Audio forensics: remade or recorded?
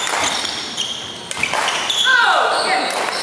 recorded